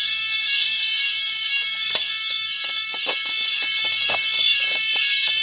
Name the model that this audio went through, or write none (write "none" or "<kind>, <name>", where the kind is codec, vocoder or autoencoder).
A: codec, DAC